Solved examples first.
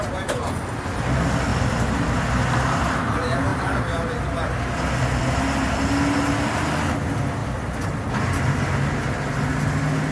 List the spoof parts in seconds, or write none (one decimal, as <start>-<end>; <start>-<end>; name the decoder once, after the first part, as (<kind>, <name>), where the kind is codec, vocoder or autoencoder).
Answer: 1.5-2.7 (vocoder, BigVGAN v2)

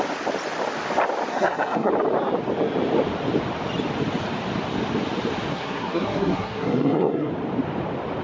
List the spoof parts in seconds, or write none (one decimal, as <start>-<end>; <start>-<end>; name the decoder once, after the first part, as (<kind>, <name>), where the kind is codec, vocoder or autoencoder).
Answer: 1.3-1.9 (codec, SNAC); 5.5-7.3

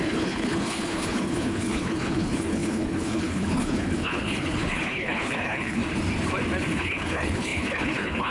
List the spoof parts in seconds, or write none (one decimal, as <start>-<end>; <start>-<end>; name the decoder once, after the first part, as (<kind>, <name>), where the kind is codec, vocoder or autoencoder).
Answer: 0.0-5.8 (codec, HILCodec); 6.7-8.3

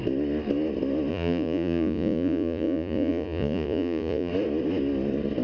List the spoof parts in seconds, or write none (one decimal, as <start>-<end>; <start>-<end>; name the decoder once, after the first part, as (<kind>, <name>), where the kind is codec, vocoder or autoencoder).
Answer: 1.1-4.3 (vocoder, Vocos)

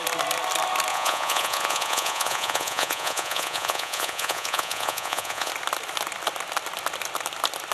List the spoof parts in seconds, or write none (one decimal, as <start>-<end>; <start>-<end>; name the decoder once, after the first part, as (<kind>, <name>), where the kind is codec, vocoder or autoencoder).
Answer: 0.9-5.5 (vocoder, Vocos)

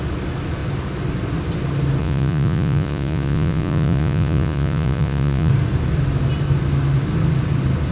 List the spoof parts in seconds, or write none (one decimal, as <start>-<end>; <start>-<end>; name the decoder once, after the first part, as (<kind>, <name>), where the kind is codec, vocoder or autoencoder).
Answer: 2.0-5.5 (vocoder, Vocos)

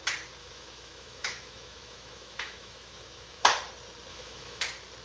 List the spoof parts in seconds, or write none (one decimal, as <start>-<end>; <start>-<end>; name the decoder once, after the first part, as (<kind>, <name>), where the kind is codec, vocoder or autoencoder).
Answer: 0.4-3.4 (autoencoder, DAC-VAE); 4.1-4.6

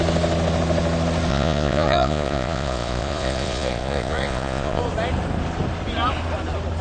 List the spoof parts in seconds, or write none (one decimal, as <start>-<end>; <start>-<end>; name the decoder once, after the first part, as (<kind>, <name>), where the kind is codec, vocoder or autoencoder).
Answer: 1.3-4.8 (vocoder, Vocos)